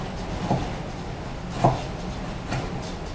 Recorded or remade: recorded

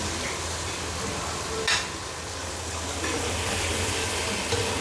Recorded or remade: recorded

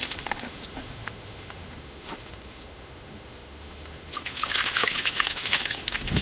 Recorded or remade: remade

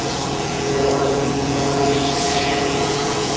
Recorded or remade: remade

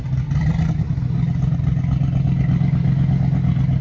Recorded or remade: recorded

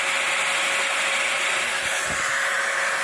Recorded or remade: recorded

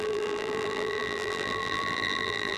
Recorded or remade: remade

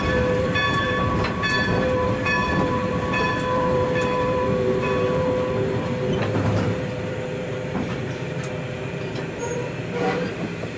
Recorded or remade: remade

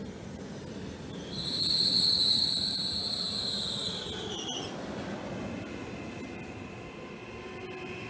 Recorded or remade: recorded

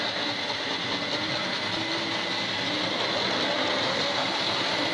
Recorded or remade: recorded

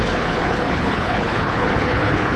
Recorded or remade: remade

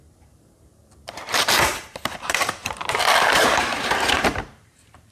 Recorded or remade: remade